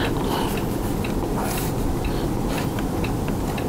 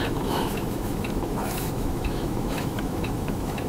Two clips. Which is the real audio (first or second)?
first